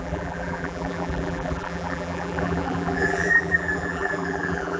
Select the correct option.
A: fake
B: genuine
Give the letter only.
A